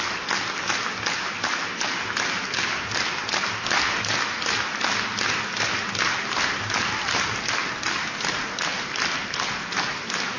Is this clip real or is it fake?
real